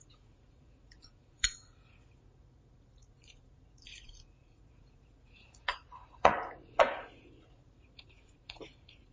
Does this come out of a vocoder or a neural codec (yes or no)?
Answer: yes